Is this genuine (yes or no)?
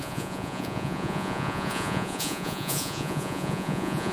no